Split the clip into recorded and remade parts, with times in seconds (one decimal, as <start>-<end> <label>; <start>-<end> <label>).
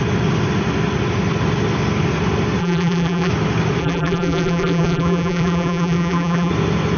0.0-2.6 recorded; 2.6-3.3 remade; 3.3-3.8 recorded; 3.8-6.5 remade; 6.5-7.0 recorded